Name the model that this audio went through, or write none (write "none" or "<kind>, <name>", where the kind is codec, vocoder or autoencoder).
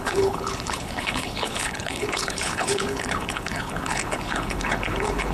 codec, HILCodec